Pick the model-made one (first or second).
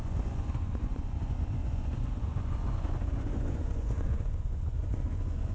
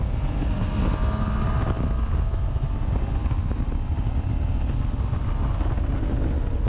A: first